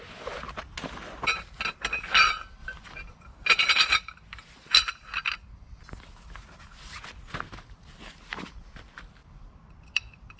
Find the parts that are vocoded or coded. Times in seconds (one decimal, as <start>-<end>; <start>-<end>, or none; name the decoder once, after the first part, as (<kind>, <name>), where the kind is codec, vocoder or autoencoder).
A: 2.6-3.6 (vocoder, BigVGAN v2); 9.2-10.4